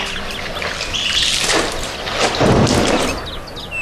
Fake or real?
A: real